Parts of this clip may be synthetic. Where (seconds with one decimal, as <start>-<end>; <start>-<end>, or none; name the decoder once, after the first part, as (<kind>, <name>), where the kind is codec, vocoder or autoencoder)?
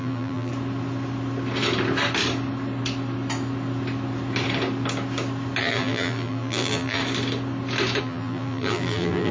0.0-0.5 (vocoder, BigVGAN v2); 5.6-7.0; 8.0-9.3